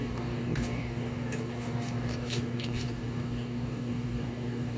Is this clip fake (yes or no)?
yes